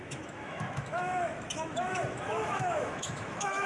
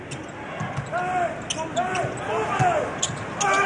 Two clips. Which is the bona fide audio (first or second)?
second